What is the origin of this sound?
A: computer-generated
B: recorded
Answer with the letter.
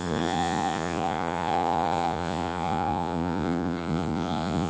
A